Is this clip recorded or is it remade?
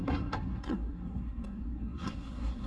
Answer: remade